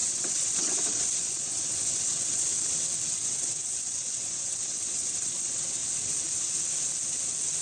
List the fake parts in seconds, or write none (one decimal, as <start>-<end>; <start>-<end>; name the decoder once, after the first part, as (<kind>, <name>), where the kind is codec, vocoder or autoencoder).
0.0-2.5 (vocoder, WaveNeXt); 3.1-5.8